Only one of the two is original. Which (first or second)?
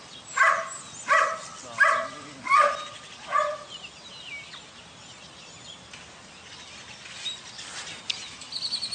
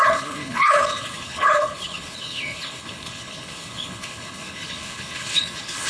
first